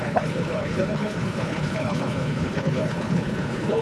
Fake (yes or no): yes